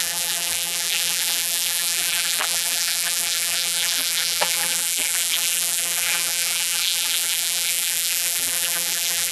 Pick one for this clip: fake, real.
fake